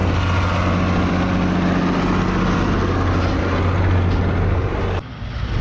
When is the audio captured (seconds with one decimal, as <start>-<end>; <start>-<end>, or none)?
0.0-5.6